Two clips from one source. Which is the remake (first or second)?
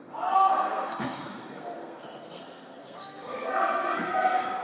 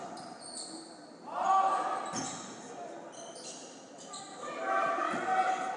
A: first